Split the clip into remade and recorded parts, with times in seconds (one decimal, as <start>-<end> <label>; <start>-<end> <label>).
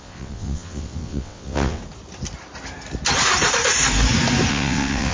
0.0-1.8 remade; 1.8-4.5 recorded; 4.5-5.1 remade